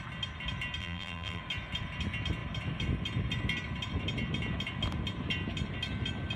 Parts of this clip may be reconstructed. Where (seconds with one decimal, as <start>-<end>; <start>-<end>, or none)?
0.8-1.4